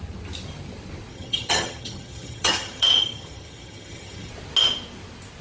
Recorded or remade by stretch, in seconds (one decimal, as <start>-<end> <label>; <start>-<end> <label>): 0.0-1.1 recorded; 1.1-4.3 remade; 4.3-5.4 recorded